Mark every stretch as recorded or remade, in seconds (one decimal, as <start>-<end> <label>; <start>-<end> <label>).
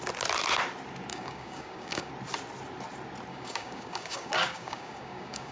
0.0-1.1 recorded; 1.1-2.1 remade; 2.1-3.3 recorded; 3.3-5.5 remade